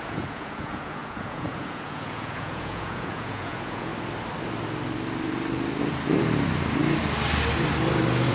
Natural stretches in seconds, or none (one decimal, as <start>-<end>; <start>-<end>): 3.9-8.3